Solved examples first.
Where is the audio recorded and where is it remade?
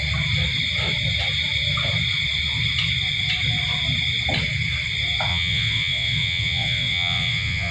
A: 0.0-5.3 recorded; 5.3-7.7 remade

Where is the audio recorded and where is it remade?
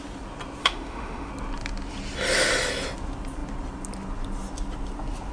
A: 0.0-0.6 recorded; 0.6-1.3 remade; 1.3-5.3 recorded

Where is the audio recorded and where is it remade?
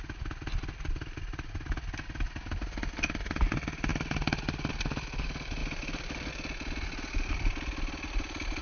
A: 0.0-3.9 recorded; 3.9-4.7 remade; 4.7-5.6 recorded; 5.6-6.3 remade; 6.3-8.6 recorded